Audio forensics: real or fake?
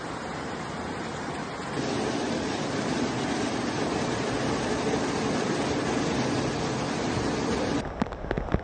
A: real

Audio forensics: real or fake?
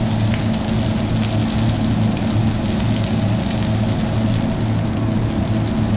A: real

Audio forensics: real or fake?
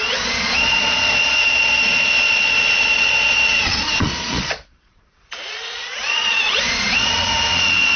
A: fake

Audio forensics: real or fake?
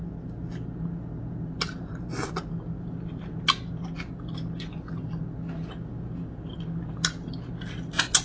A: real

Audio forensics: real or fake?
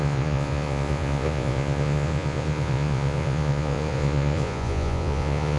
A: fake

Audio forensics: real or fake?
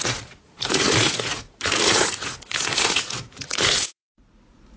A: fake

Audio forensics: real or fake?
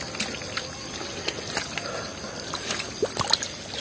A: real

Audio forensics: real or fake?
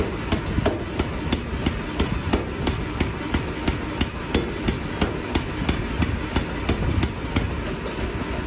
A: real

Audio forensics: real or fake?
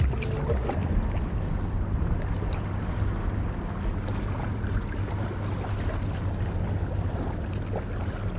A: real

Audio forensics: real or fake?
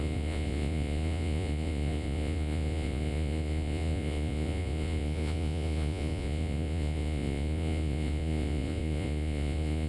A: fake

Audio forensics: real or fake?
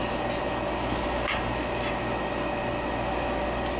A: real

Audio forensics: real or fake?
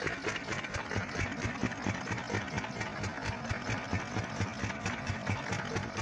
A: real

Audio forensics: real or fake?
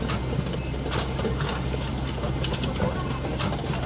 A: real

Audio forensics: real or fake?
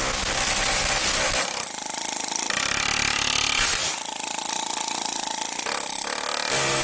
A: real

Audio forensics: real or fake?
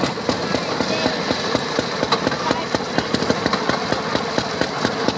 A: real